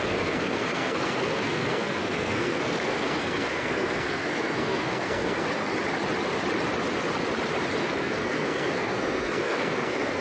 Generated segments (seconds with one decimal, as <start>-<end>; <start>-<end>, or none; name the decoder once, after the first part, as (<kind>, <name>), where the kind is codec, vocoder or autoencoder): 0.0-5.7 (codec, SNAC); 7.8-10.2